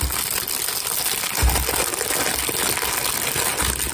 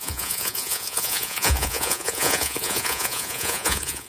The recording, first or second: first